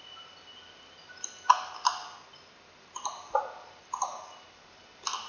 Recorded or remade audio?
recorded